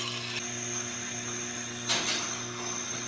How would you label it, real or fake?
real